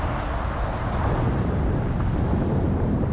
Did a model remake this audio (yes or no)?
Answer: yes